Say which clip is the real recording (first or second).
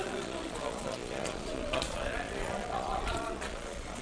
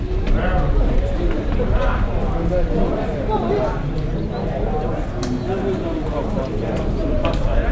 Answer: second